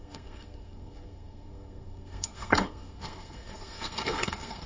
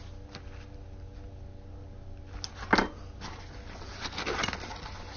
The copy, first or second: first